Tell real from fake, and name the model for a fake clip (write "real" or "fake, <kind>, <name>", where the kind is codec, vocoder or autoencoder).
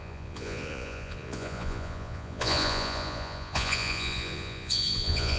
fake, vocoder, Vocos